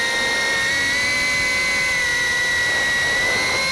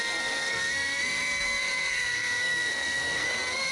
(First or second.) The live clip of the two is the first